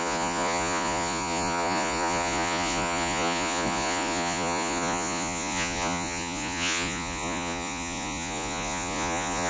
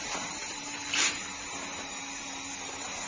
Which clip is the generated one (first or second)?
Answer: first